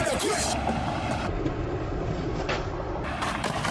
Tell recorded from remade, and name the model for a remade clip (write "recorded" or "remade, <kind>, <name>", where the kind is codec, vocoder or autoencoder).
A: remade, vocoder, BigVGAN v2